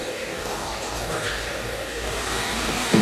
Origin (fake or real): fake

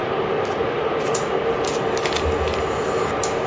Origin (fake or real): real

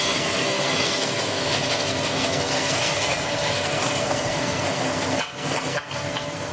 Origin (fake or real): fake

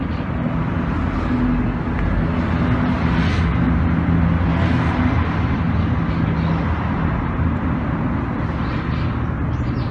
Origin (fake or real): real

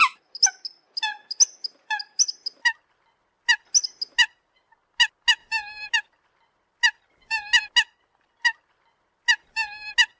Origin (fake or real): real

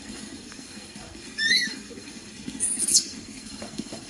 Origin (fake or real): fake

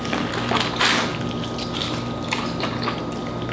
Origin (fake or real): real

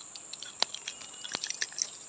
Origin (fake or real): real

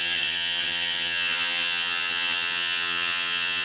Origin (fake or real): fake